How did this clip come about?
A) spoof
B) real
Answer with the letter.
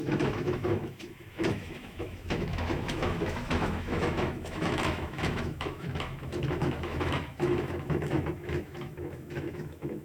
A